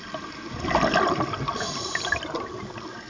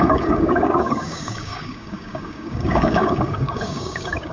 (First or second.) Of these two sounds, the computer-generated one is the second